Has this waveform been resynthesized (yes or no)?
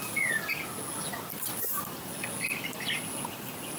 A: no